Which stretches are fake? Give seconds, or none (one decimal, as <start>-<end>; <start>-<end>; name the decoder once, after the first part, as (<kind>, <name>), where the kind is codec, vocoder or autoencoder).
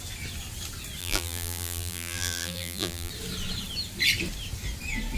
1.0-3.1 (vocoder, BigVGAN v2)